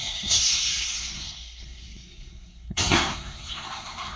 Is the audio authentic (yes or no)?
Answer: no